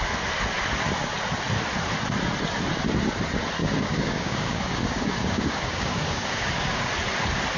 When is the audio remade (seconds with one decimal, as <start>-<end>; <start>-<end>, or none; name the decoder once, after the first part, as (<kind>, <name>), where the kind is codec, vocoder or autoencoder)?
3.6-6.9 (codec, DAC)

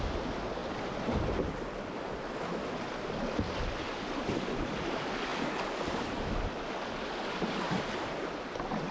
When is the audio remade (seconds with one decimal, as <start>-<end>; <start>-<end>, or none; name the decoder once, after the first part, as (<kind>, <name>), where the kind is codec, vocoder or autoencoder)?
none

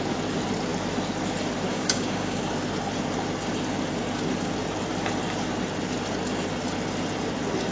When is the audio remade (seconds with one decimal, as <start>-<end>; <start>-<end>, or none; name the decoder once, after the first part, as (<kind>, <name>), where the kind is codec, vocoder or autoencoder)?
1.7-2.4 (codec, DAC)

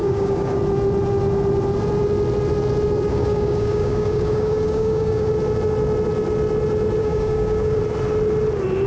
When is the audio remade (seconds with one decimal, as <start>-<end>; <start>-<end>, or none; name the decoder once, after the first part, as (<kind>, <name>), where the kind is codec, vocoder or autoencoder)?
0.0-0.6 (codec, DAC); 3.1-5.3; 7.0-7.8

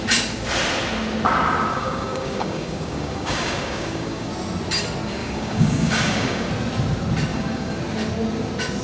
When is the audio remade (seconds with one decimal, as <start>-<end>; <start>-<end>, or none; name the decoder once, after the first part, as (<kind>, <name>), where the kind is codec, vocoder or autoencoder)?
1.7-4.3 (codec, DAC); 5.2-6.5; 7.3-7.8

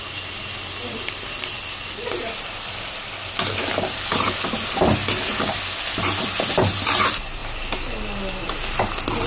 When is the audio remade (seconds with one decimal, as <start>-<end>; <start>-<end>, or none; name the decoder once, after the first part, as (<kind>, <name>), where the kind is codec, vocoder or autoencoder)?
none